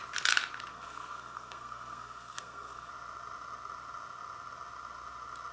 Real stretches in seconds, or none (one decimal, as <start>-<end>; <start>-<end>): 0.0-0.7; 2.9-5.5